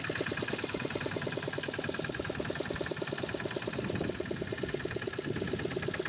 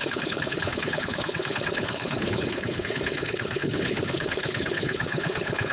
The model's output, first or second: second